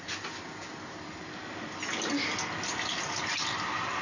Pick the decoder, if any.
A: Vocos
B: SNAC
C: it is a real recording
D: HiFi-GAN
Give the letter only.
C